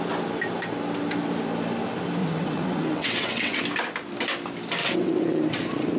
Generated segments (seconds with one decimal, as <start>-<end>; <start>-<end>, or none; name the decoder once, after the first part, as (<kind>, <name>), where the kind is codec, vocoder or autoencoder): 2.2-3.6 (vocoder, WaveNeXt); 4.8-6.0

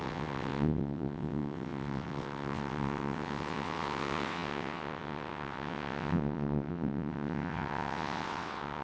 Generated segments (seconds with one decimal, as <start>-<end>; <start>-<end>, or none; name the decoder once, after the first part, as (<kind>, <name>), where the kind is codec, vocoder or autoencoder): 0.0-8.8 (vocoder, WaveNeXt)

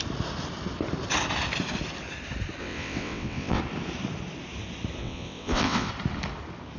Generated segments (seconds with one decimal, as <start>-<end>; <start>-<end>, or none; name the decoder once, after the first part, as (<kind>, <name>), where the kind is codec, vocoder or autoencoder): 2.6-3.6 (vocoder, WaveNeXt); 5.0-5.9

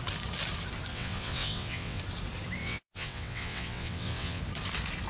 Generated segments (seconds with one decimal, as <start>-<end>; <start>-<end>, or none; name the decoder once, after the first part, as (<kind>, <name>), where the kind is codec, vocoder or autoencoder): 0.9-2.0 (vocoder, WaveNeXt); 2.6-4.4

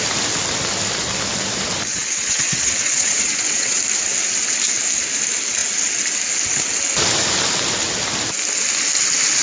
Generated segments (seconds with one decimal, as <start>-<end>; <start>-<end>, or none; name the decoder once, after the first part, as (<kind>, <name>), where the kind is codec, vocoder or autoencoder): 1.9-3.8 (vocoder, WaveNeXt)

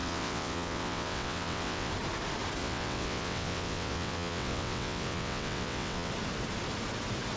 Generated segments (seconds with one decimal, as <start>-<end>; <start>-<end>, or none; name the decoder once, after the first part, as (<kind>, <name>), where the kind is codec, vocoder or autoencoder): 0.0-1.9 (vocoder, WaveNeXt); 2.6-6.1

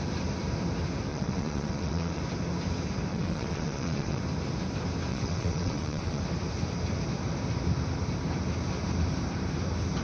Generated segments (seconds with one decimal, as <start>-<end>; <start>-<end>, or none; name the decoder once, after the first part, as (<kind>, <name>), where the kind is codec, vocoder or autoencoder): 1.1-2.2 (vocoder, WaveNeXt); 3.1-4.2; 5.1-6.2

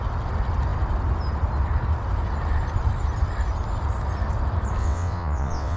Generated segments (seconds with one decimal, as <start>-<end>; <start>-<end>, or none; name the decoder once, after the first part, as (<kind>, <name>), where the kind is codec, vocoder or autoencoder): 4.8-5.8 (vocoder, WaveNeXt)